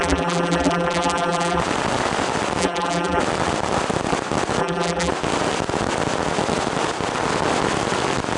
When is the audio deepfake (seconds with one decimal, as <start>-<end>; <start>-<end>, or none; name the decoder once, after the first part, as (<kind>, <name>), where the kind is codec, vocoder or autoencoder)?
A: 0.0-1.6 (vocoder, BigVGAN v2); 2.6-3.2; 4.6-5.1